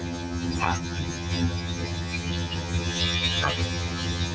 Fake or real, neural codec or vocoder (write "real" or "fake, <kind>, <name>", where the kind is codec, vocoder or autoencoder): fake, vocoder, HiFi-GAN